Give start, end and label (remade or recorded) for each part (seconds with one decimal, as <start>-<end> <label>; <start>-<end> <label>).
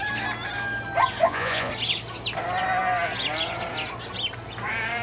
0.0-1.2 recorded; 1.2-1.7 remade; 1.7-5.0 recorded